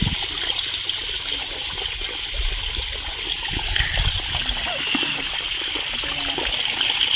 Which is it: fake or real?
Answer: real